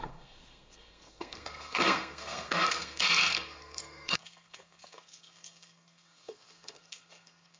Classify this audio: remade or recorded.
remade